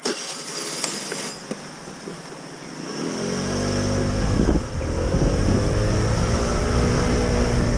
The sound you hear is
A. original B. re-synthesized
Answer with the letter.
A